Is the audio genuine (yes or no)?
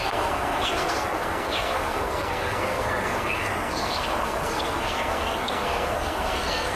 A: no